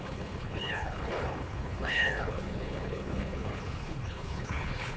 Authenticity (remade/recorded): remade